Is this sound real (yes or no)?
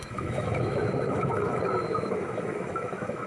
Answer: no